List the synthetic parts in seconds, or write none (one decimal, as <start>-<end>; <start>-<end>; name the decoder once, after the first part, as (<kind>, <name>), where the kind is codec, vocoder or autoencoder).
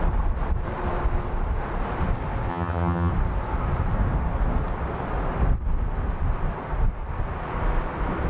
2.5-3.1 (vocoder, HiFi-GAN)